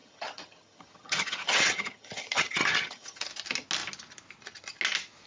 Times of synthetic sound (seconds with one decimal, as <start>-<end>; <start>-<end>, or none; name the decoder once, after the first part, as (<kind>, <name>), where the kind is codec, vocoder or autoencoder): 0.0-3.2 (vocoder, HiFi-GAN)